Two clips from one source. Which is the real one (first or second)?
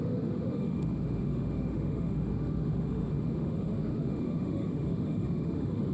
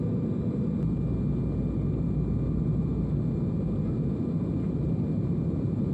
second